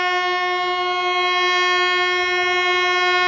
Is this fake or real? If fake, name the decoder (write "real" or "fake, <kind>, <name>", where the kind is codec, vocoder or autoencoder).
real